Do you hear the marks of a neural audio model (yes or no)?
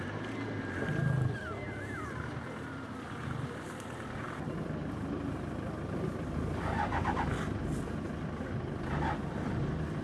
no